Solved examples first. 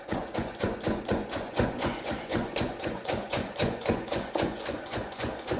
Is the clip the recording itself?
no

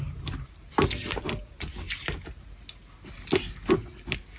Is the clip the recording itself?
yes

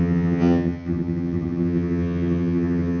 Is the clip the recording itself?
no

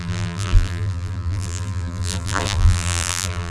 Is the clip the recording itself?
no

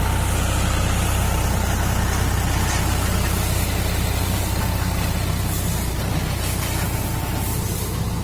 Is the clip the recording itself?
yes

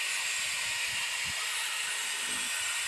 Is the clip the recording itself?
yes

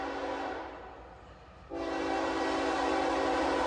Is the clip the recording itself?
yes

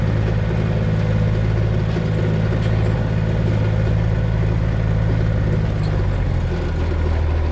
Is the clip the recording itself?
yes